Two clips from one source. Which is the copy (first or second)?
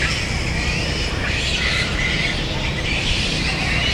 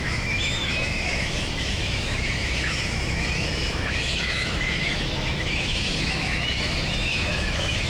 second